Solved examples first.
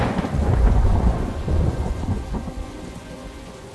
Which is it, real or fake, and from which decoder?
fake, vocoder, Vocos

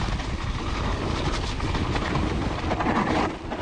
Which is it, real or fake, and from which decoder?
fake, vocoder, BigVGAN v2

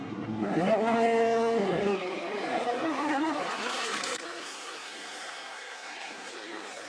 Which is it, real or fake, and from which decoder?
fake, codec, SNAC